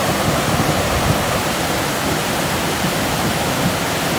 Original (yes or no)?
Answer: yes